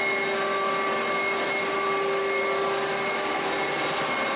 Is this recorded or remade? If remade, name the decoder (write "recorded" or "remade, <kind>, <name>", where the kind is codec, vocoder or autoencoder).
recorded